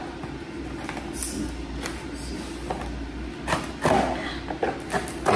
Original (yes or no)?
yes